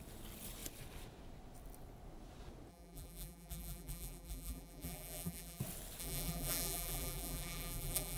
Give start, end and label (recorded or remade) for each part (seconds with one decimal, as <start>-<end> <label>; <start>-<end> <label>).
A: 0.0-2.7 recorded; 2.7-5.6 remade; 5.6-6.0 recorded; 6.0-8.2 remade